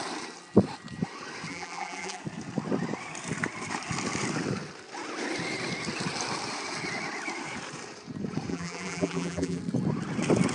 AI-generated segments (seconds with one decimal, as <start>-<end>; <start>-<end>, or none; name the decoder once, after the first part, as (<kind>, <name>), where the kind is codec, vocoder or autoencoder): 1.5-2.2 (vocoder, BigVGAN v2); 8.5-9.6